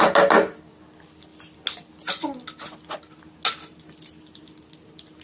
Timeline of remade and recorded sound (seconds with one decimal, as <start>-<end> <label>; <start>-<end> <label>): 0.0-5.2 recorded